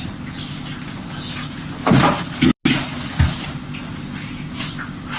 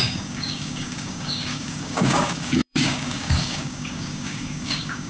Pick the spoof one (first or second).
second